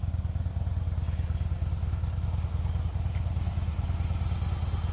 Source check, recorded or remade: recorded